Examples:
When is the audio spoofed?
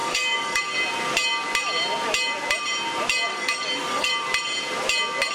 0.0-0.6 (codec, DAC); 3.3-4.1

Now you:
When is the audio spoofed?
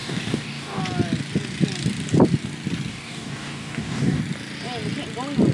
0.0-0.8 (codec, DAC); 2.9-4.2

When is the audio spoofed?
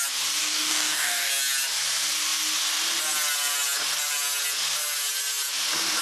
0.4-1.3 (codec, DAC)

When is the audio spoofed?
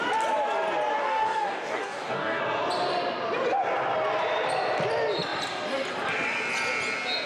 1.0-2.4 (codec, DAC)